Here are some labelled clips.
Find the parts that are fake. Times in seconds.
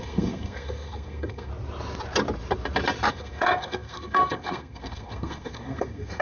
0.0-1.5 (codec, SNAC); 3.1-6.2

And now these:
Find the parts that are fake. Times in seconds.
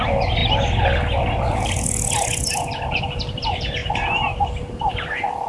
0.0-0.4 (vocoder, BigVGAN v2); 3.0-3.8; 4.9-5.5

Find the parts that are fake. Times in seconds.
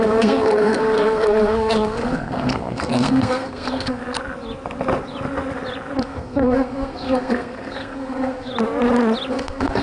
0.0-4.0 (codec, SNAC); 6.0-8.5; 9.3-9.8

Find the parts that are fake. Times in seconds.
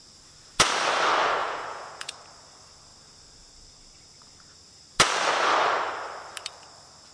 1.4-2.1 (vocoder, Vocos)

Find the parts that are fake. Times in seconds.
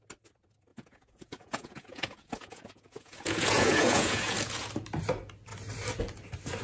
0.7-4.7 (vocoder, Vocos)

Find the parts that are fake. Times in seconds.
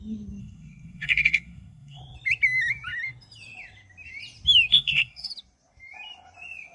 0.4-2.0 (codec, SNAC); 4.7-5.3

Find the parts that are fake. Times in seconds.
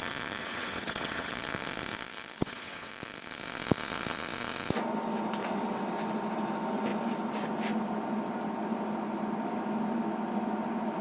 0.4-1.3 (vocoder, WaveNeXt); 2.4-2.9; 5.4-5.9